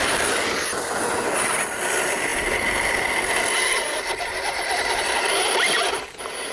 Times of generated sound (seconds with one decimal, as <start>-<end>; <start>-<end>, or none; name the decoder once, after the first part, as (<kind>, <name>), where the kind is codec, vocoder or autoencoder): none